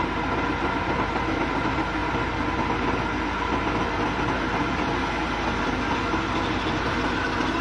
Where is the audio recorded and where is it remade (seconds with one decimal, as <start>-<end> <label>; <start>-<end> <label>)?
0.0-7.6 recorded